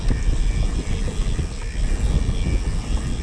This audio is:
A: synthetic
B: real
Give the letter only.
B